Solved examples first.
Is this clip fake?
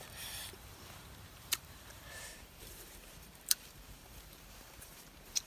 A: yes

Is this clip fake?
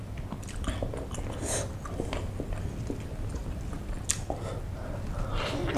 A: no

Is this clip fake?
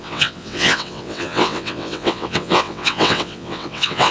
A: yes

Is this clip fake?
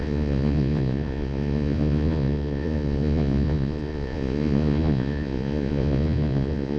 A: yes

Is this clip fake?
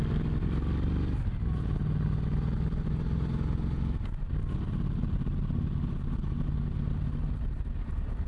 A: no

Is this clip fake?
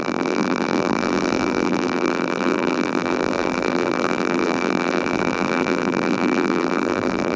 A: yes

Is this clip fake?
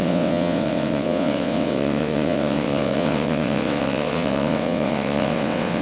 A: yes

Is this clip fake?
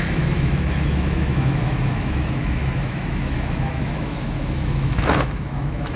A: yes